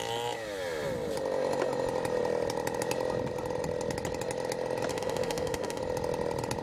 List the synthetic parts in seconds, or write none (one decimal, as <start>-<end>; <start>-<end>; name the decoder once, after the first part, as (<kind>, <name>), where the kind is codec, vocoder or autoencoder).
4.9-5.8 (autoencoder, DAC-VAE)

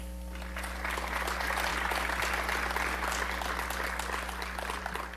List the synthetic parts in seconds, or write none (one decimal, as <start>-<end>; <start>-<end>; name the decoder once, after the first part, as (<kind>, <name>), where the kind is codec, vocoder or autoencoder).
none

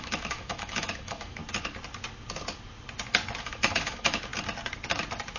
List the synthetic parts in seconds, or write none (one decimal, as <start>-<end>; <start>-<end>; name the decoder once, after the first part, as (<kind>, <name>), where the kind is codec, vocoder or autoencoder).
0.0-1.4 (autoencoder, DAC-VAE); 3.4-4.3

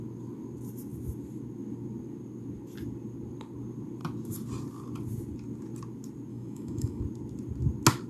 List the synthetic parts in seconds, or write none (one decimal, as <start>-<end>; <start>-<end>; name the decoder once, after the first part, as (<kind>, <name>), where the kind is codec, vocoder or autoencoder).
6.3-7.0 (autoencoder, DAC-VAE)

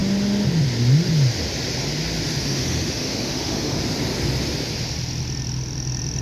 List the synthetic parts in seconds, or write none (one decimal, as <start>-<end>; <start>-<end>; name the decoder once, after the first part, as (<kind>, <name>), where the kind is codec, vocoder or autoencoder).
2.4-3.8 (autoencoder, DAC-VAE)

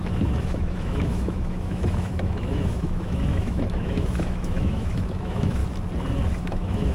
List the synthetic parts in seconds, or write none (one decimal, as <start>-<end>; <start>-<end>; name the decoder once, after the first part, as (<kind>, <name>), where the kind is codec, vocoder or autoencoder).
0.0-5.6 (autoencoder, DAC-VAE); 6.4-6.9